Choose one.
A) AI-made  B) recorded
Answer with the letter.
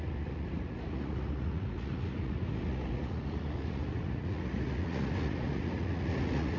A